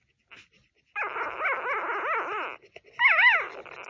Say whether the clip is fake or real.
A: real